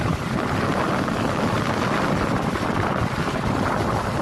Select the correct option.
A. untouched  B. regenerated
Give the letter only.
A